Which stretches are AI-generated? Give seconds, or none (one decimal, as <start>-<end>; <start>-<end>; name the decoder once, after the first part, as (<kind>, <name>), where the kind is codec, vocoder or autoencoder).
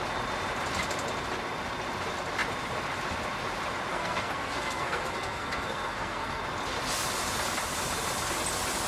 3.9-6.4 (codec, SNAC)